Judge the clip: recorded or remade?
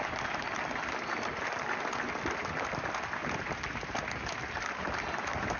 recorded